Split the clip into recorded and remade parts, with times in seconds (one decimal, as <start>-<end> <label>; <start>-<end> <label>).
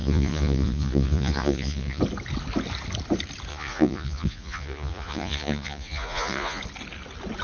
0.0-2.0 remade; 2.0-3.5 recorded; 3.5-6.6 remade; 6.6-7.4 recorded